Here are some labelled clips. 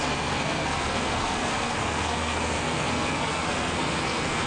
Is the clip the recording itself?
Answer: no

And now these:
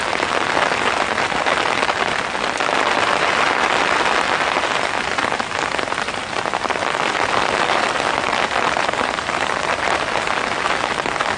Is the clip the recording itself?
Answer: yes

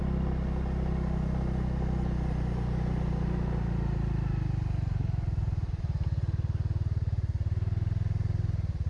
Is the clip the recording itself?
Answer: yes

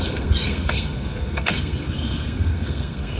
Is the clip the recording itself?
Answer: no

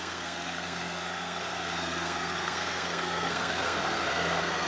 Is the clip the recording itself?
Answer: no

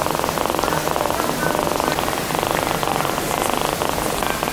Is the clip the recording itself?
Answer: yes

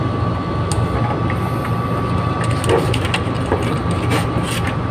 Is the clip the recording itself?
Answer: yes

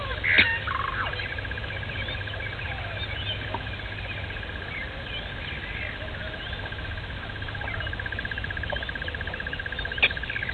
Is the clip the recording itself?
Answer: yes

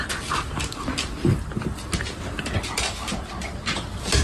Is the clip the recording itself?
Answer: yes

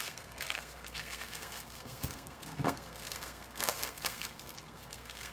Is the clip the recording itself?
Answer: no